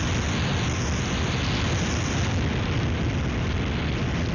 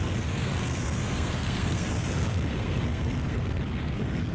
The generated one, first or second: second